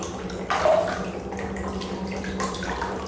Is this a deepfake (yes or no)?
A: no